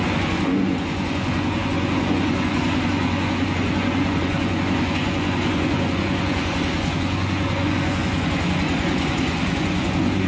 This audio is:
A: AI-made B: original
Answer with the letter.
A